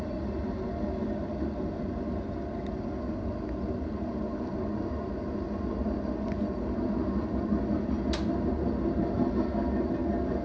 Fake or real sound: real